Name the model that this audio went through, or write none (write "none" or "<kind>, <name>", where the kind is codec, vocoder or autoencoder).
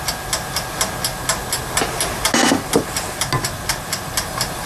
none